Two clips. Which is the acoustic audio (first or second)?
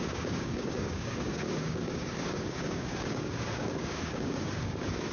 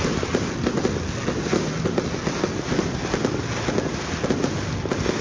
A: second